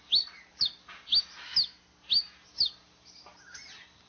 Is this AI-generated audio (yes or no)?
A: no